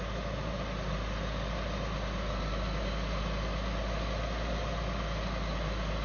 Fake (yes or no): no